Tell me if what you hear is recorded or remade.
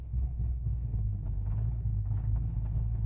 remade